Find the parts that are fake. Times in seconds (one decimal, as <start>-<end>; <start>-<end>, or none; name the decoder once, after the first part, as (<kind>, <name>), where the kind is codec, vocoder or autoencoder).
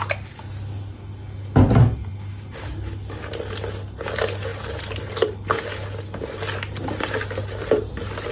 none